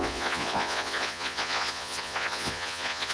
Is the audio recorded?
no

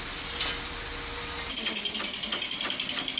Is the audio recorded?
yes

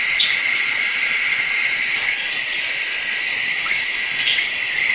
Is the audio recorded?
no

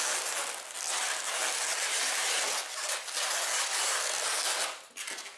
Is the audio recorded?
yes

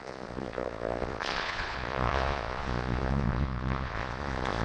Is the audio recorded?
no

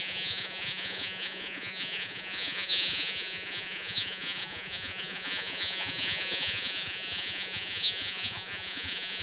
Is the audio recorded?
no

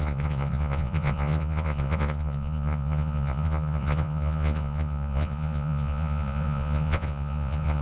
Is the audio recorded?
no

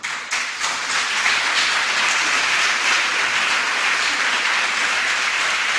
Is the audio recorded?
yes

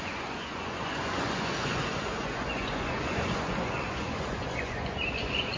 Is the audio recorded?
no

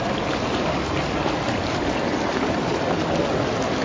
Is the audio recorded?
yes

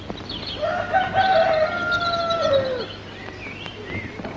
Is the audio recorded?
yes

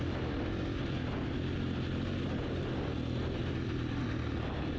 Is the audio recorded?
yes